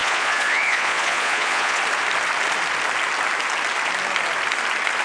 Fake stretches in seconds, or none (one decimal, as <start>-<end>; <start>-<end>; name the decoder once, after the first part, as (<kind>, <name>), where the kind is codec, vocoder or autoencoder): 0.0-1.8 (vocoder, Vocos)